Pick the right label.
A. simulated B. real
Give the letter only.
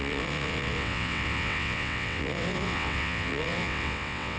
A